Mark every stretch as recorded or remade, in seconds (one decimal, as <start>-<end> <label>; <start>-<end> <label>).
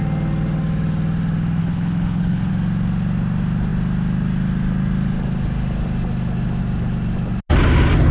0.0-1.6 recorded; 1.6-2.5 remade; 2.5-8.1 recorded